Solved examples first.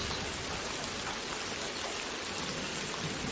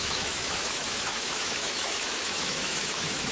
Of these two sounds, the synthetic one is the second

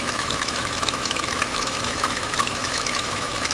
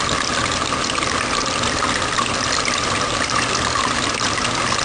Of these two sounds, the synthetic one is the first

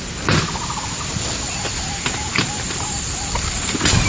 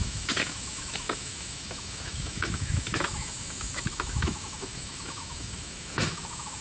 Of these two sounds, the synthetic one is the second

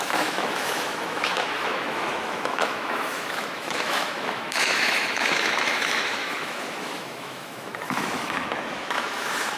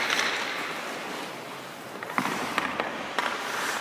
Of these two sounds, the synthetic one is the first